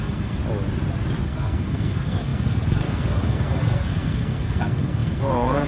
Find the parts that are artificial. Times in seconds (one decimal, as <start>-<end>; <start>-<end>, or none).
0.0-0.4; 1.2-5.7